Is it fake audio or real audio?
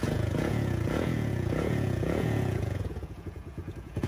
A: fake